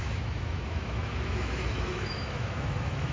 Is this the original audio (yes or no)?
no